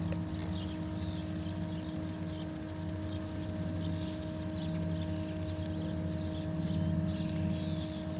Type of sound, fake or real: real